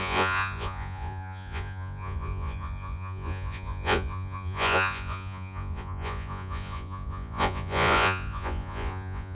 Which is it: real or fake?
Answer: fake